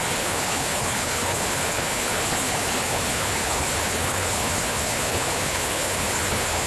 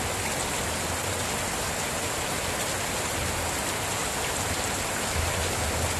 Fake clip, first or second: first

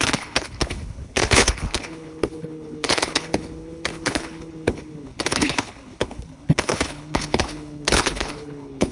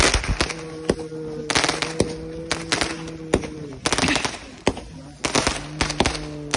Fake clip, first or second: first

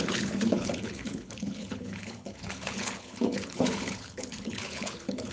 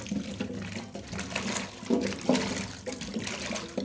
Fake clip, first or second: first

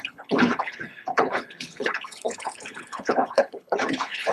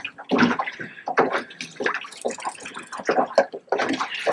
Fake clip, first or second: first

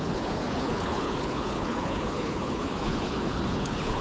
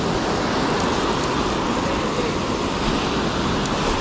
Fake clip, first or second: first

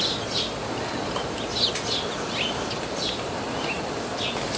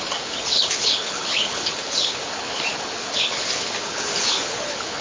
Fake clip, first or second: second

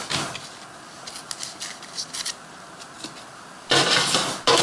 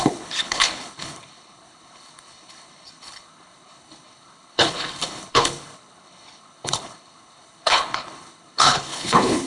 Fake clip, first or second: second